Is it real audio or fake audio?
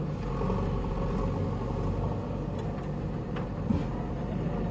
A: real